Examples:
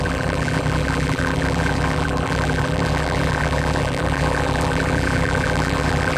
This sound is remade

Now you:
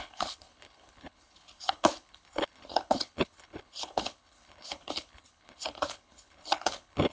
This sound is remade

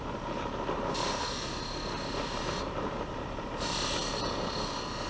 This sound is recorded